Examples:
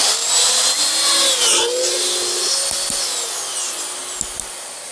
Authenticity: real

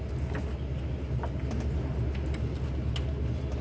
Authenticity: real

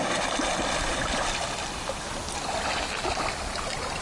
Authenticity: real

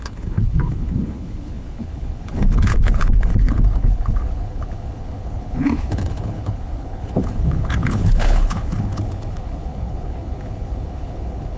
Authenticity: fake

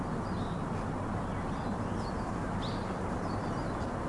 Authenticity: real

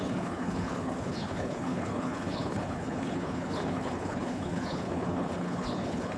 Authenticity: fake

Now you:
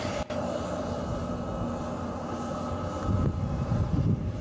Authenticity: real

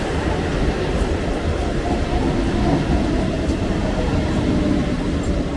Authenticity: real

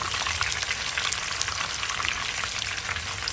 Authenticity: real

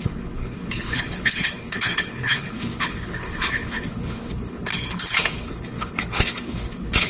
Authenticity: fake